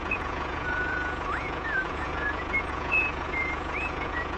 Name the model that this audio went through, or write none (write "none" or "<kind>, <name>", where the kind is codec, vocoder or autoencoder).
vocoder, Vocos